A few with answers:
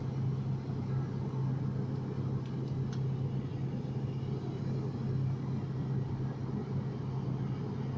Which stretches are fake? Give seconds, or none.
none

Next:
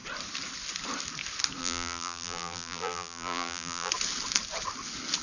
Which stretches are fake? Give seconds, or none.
1.6-3.9 (vocoder, BigVGAN v2)

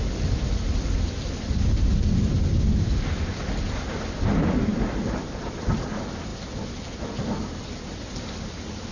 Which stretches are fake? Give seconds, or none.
none

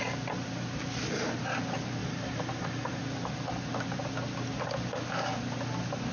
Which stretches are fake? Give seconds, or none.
2.0-3.0 (vocoder, BigVGAN v2)

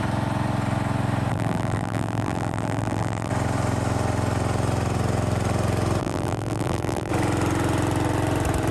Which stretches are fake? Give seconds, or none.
1.3-3.3 (vocoder, BigVGAN v2); 6.0-7.1

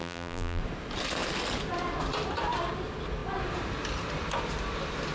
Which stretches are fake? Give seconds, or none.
0.0-0.6 (vocoder, BigVGAN v2)